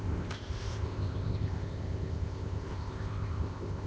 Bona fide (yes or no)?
no